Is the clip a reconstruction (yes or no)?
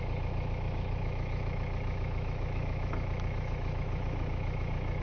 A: yes